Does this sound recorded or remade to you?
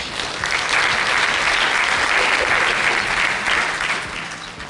recorded